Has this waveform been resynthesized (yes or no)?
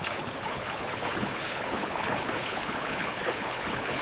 yes